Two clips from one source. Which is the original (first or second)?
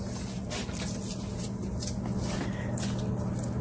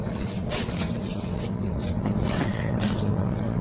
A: first